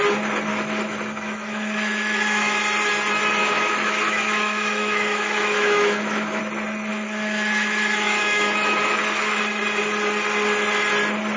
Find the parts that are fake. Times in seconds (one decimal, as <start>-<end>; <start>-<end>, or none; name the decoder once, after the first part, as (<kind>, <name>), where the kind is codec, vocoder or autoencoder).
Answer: 0.5-2.6 (autoencoder, DAC-VAE); 3.4-6.4; 6.9-9.4